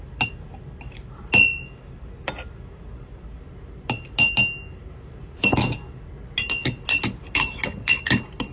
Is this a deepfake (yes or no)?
no